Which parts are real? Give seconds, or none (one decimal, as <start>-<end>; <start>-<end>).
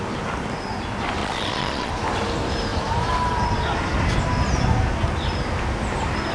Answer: 0.0-1.2; 1.9-6.3